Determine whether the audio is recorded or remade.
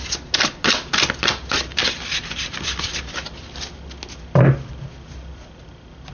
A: recorded